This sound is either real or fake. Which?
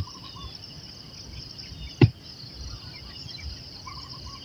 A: real